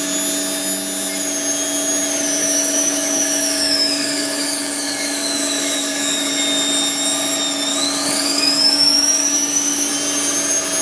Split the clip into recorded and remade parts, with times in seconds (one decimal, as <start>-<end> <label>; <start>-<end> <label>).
0.0-2.4 recorded; 2.4-6.3 remade; 6.3-7.7 recorded; 7.7-9.9 remade; 9.9-10.8 recorded